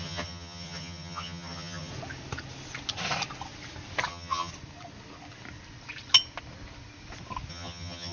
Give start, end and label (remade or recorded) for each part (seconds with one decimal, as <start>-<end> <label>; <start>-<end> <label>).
0.0-1.9 remade; 1.9-4.1 recorded; 4.1-4.5 remade; 4.5-7.5 recorded; 7.5-8.1 remade

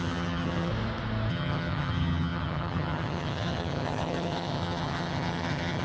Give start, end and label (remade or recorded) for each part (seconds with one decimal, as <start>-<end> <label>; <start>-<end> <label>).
0.0-0.7 remade; 0.7-1.3 recorded; 1.3-5.8 remade